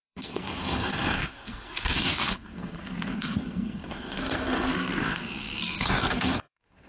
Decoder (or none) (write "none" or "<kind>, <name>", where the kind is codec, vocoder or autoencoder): codec, SNAC